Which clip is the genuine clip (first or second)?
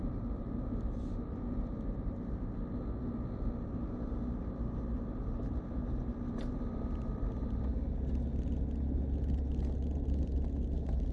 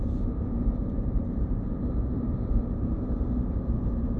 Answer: first